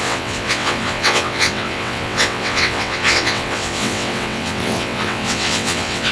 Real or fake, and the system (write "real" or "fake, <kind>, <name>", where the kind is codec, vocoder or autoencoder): fake, vocoder, WaveNeXt